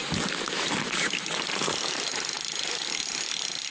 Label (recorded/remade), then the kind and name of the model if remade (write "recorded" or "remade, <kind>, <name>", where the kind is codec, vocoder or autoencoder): recorded